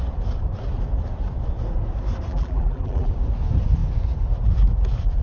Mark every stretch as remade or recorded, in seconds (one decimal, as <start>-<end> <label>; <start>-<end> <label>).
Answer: 0.0-2.3 recorded; 2.3-3.1 remade; 3.1-5.2 recorded